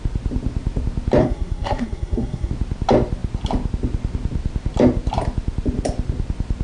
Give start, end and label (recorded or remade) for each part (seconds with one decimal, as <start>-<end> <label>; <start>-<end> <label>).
0.0-1.2 recorded; 1.2-2.5 remade; 2.5-6.6 recorded